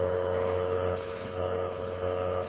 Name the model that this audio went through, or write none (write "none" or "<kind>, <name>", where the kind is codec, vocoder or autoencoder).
codec, HILCodec